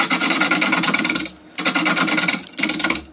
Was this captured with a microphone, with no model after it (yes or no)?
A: yes